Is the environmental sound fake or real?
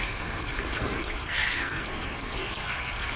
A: fake